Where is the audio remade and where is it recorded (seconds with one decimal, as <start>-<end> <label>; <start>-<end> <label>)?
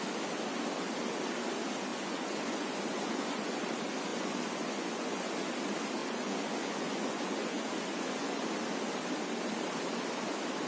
0.0-1.9 recorded; 1.9-3.6 remade; 3.6-4.1 recorded; 4.1-5.3 remade; 5.3-6.0 recorded; 6.0-8.5 remade; 8.5-10.7 recorded